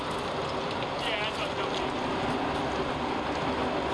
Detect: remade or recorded recorded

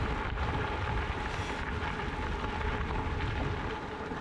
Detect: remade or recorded recorded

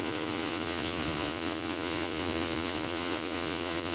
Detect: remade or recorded remade